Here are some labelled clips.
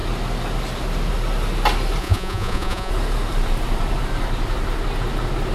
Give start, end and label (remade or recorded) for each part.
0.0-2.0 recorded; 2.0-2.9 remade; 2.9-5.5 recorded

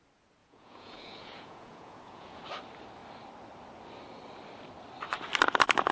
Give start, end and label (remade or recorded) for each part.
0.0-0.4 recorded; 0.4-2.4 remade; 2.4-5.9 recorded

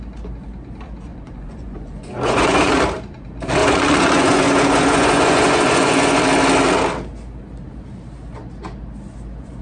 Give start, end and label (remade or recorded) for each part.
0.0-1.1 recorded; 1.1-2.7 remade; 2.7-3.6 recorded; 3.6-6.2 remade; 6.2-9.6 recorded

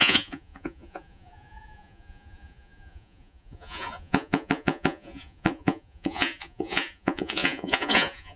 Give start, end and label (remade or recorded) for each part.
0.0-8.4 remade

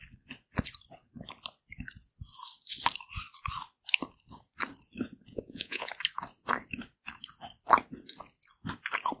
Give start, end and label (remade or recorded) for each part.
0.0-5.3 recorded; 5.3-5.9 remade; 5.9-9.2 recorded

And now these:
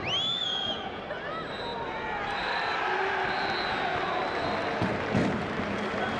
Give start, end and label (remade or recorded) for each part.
0.0-0.4 recorded; 0.4-1.0 remade; 1.0-6.2 recorded

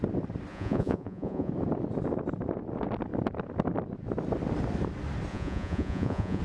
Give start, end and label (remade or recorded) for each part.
0.0-0.5 recorded; 0.5-1.5 remade; 1.5-5.3 recorded; 5.3-6.4 remade

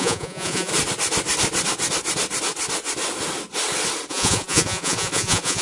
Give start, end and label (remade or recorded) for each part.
0.0-0.7 remade; 0.7-4.1 recorded; 4.1-5.6 remade